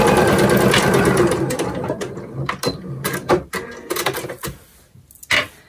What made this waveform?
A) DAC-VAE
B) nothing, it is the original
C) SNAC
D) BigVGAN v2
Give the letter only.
B